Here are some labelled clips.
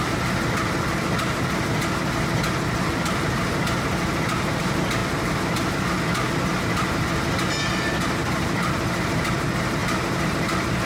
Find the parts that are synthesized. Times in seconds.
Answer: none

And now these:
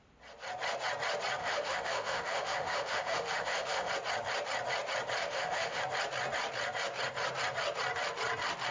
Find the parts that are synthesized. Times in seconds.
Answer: 1.4-3.9 (autoencoder, DAC-VAE); 5.2-5.8

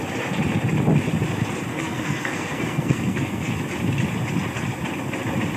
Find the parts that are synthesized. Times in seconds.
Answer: 1.7-3.5 (codec, SNAC)

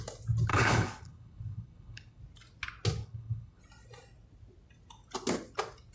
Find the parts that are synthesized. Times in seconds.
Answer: 0.5-2.2 (codec, HILCodec); 3.0-3.6

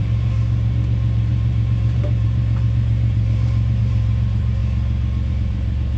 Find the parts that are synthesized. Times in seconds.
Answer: 0.0-4.6 (vocoder, BigVGAN v2); 5.3-6.0